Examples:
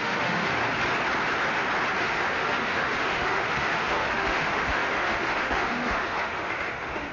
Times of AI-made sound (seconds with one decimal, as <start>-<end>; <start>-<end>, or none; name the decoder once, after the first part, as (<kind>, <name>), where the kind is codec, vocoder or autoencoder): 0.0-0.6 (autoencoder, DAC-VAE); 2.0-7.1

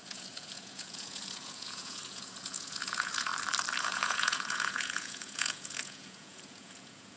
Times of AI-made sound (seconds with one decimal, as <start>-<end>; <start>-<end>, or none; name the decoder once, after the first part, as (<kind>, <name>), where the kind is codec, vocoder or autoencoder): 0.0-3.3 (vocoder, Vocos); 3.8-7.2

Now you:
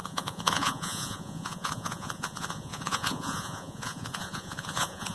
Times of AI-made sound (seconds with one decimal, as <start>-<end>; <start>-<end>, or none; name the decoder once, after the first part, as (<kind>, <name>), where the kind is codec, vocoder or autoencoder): 0.0-5.1 (vocoder, Vocos)

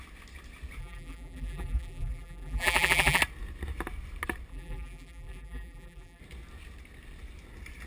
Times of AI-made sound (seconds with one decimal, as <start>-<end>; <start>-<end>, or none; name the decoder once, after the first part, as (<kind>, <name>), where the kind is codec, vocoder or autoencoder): 0.8-3.2 (vocoder, BigVGAN v2); 4.5-6.2

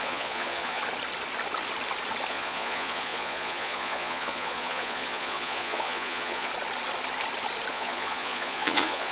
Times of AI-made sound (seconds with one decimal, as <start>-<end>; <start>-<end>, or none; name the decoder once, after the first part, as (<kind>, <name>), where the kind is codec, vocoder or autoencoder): 0.0-0.8 (vocoder, Vocos); 2.3-6.5; 7.7-9.1

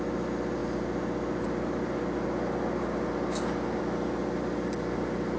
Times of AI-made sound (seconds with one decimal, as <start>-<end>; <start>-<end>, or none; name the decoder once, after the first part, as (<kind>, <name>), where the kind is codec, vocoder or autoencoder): none